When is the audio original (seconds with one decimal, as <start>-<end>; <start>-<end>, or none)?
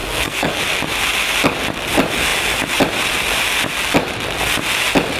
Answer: 0.6-5.2